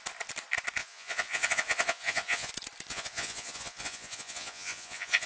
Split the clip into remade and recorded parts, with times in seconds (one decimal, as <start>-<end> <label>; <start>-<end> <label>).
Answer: 0.0-0.8 recorded; 0.8-2.5 remade; 2.5-2.9 recorded; 2.9-5.3 remade